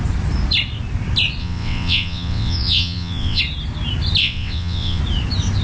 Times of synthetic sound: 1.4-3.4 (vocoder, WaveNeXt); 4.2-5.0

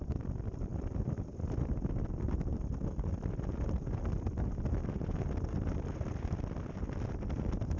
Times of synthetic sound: none

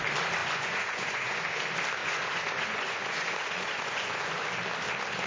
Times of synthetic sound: 0.4-1.4 (vocoder, Vocos); 2.0-4.4

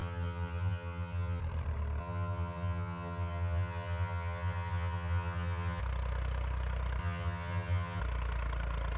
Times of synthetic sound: 0.0-1.4 (vocoder, HiFi-GAN); 2.0-5.8; 7.0-8.0